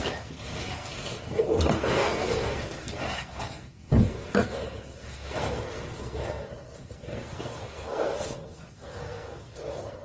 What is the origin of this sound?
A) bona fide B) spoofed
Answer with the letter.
B